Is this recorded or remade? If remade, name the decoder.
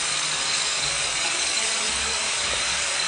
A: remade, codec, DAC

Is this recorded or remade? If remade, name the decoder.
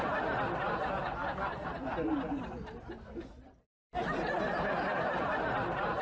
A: recorded